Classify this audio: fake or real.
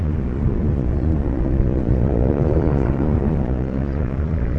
fake